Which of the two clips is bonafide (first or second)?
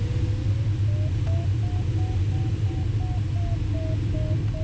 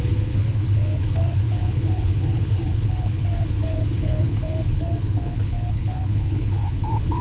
first